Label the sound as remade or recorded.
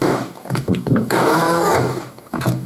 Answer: remade